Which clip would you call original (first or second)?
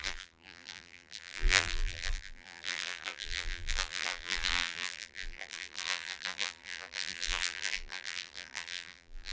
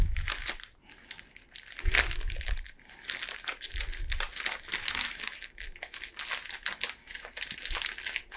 second